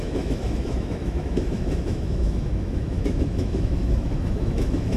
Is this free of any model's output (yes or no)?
no